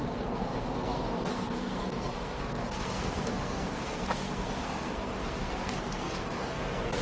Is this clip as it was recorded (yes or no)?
no